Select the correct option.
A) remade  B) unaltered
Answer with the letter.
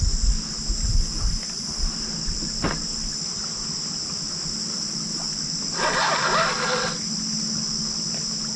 B